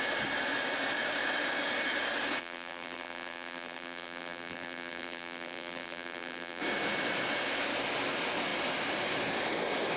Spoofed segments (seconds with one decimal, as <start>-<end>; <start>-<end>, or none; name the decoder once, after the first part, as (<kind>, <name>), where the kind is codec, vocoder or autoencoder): 2.4-6.6 (vocoder, BigVGAN v2)